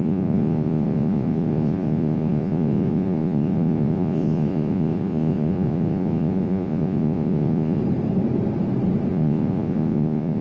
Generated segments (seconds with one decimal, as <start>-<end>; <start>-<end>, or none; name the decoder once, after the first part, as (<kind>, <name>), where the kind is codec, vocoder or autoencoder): 0.0-7.8 (vocoder, Vocos); 9.1-10.4